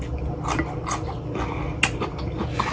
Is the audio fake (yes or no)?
no